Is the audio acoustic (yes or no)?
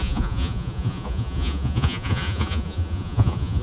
no